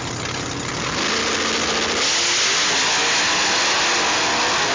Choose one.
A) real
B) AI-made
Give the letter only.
A